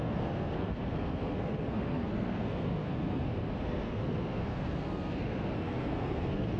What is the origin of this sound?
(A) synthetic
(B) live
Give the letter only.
A